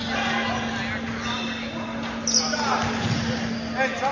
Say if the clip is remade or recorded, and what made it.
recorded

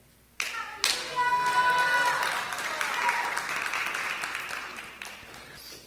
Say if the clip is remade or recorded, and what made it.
recorded